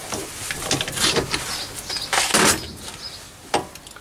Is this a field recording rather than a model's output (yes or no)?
yes